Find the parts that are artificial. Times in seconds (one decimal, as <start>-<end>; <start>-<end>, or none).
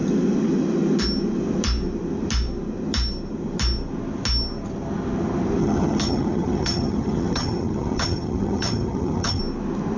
5.6-9.4